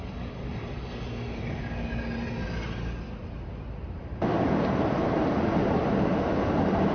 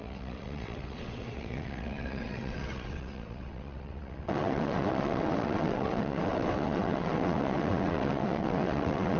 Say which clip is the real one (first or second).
first